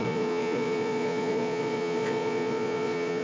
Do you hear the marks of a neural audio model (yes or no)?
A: yes